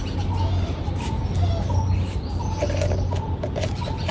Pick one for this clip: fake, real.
real